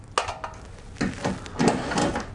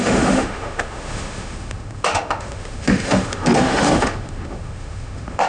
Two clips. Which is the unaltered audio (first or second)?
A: first